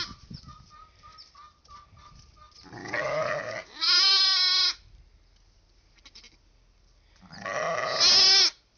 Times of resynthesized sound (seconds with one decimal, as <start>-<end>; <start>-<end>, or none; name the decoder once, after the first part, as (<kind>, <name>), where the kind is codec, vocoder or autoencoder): none